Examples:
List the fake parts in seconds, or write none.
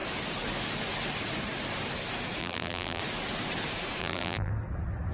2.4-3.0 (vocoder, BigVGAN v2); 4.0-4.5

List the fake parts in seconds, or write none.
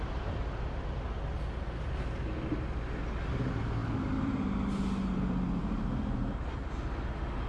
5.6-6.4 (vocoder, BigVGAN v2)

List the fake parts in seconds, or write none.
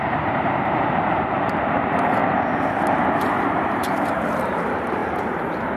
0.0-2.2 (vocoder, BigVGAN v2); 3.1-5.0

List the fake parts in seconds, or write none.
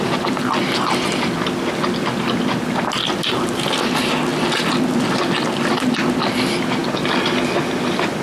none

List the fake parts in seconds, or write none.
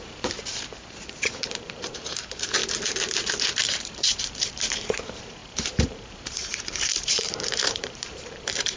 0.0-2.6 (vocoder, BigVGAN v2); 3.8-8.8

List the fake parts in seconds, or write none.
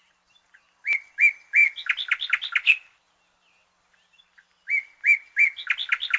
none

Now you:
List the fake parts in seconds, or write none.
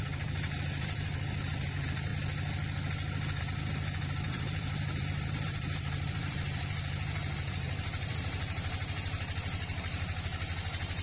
0.0-2.1 (vocoder, BigVGAN v2); 3.4-11.0